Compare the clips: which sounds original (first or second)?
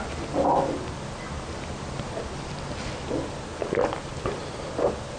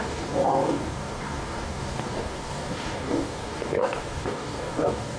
first